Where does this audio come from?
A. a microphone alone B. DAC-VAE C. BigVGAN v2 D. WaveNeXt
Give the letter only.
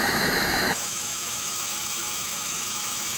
B